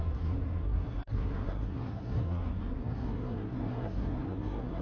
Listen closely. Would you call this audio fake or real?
fake